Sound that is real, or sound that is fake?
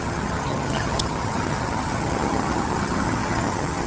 fake